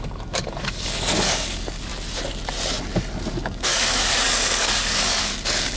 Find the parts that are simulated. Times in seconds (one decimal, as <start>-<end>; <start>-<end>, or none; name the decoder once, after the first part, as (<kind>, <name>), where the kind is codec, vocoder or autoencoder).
0.0-1.9 (codec, DAC); 3.3-5.8